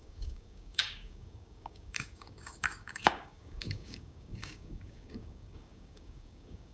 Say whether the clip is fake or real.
fake